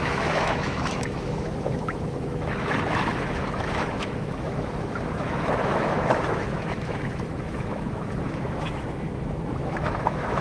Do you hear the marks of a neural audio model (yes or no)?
yes